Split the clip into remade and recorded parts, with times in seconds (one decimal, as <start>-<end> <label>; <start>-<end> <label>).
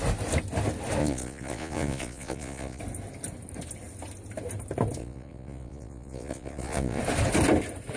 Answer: 0.0-1.0 recorded; 1.0-2.8 remade; 2.8-5.0 recorded; 5.0-7.0 remade; 7.0-8.0 recorded